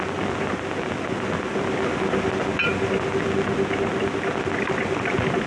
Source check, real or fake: real